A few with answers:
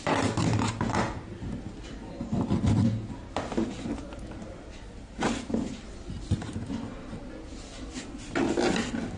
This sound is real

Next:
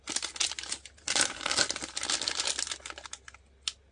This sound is real